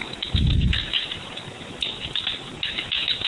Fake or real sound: real